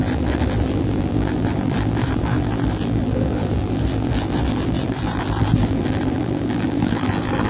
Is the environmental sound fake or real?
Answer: fake